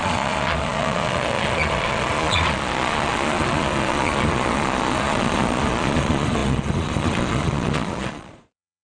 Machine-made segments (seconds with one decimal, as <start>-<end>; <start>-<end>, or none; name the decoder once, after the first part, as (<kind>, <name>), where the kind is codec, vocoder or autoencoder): 0.0-8.8 (vocoder, Vocos)